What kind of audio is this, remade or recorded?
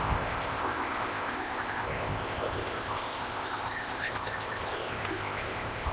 remade